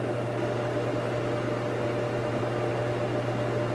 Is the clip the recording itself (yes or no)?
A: yes